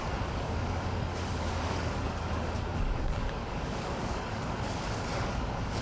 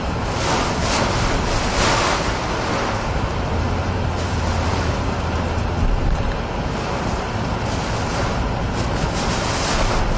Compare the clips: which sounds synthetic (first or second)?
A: first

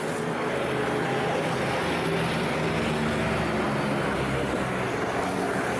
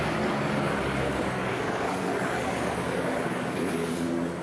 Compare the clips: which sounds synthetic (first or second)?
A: second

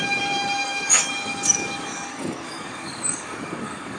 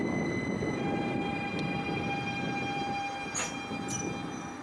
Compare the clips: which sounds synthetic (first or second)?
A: first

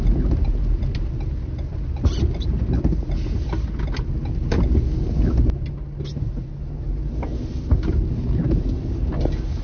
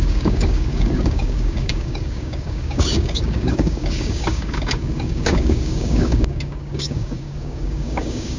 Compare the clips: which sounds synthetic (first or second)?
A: second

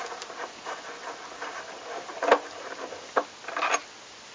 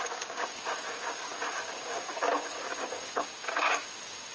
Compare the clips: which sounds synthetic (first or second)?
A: second